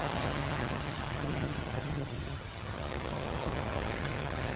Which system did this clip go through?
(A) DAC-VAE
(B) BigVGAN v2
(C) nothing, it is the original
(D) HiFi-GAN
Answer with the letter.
D